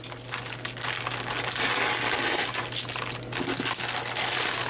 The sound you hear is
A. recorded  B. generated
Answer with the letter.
A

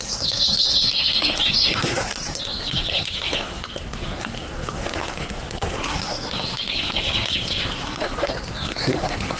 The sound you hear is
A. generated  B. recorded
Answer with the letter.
A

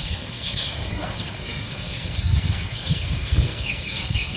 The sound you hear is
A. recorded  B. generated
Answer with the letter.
B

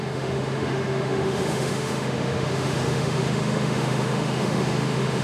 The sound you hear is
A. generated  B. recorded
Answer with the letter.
A